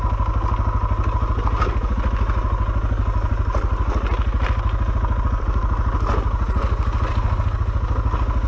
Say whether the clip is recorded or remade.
recorded